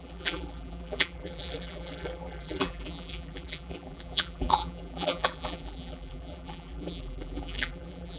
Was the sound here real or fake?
fake